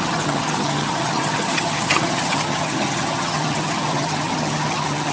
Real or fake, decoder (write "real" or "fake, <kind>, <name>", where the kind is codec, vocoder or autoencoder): fake, vocoder, HiFi-GAN